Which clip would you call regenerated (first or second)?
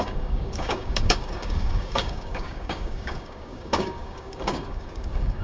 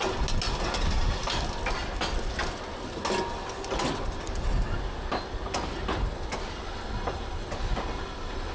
first